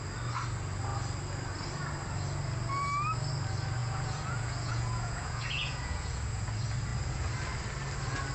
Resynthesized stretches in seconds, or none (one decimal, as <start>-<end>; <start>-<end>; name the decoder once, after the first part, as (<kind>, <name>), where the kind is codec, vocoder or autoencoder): 3.8-6.5 (vocoder, Vocos)